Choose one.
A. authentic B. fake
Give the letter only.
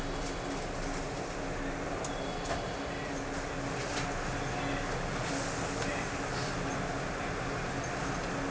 A